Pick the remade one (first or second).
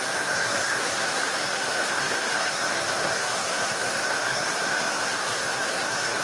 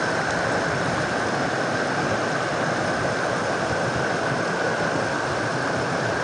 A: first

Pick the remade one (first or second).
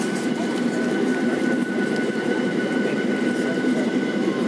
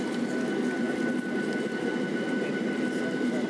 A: first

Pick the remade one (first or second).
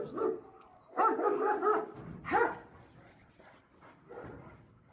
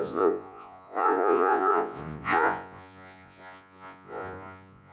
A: second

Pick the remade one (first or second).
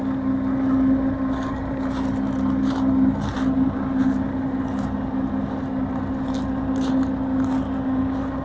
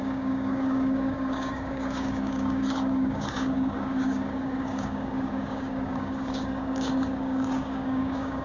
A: second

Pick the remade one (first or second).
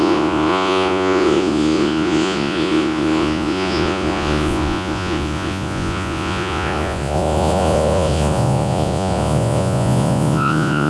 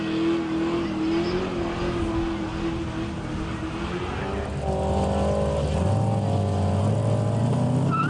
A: first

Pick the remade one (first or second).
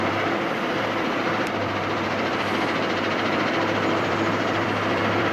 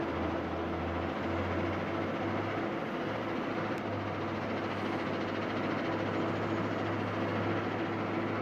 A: first